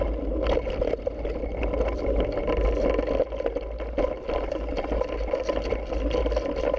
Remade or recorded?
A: recorded